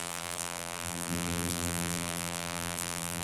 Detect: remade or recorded remade